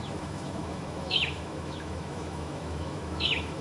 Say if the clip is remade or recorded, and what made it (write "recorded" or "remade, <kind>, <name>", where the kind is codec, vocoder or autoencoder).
remade, autoencoder, DAC-VAE